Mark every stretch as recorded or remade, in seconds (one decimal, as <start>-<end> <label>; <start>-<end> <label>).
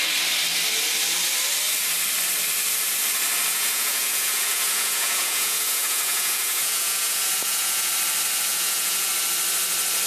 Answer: 0.0-3.5 recorded; 3.5-7.9 remade; 7.9-8.5 recorded; 8.5-9.1 remade; 9.1-10.1 recorded